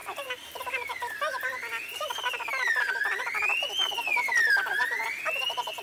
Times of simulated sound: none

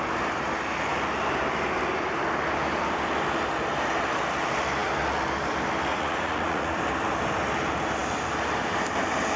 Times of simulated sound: 5.9-6.8 (vocoder, Vocos)

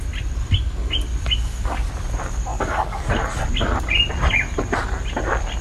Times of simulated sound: 2.5-3.1 (codec, DAC)

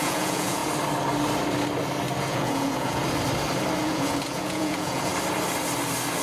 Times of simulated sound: 0.0-0.6 (vocoder, Vocos); 2.2-3.0; 3.8-5.1

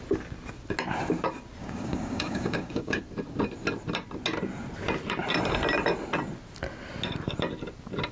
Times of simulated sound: 1.6-3.0 (codec, DAC)

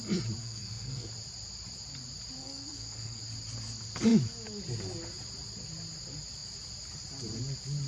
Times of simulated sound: 0.4-1.1 (codec, SNAC); 2.4-3.2